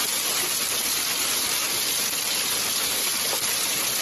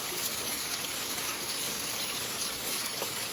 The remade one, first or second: second